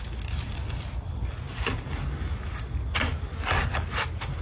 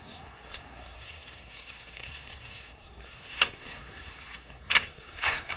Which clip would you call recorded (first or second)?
first